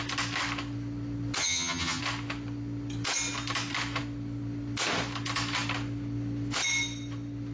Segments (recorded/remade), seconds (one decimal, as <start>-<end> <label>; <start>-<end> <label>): 0.0-1.4 recorded; 1.4-2.0 remade; 2.0-7.5 recorded